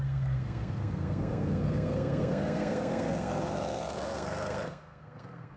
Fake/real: fake